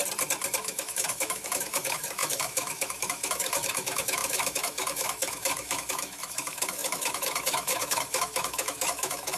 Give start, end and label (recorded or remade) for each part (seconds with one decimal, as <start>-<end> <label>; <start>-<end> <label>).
0.0-0.6 recorded; 0.6-9.4 remade